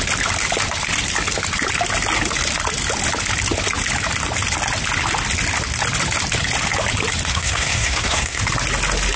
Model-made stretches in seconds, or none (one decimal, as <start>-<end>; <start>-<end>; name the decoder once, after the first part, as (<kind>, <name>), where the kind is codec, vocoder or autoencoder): 7.3-8.4 (codec, SNAC)